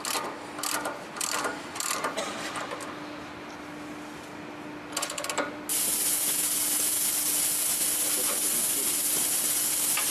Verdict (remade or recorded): recorded